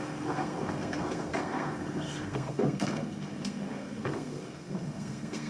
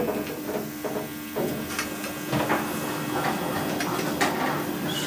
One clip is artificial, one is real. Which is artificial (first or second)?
first